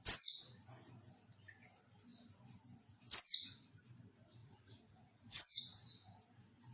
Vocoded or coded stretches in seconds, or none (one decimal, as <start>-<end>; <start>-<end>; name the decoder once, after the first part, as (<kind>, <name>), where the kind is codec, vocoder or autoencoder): 4.4-5.6 (vocoder, Vocos)